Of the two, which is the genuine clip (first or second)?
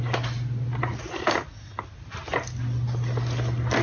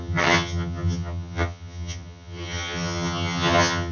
first